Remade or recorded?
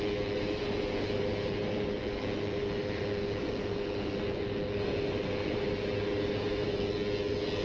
recorded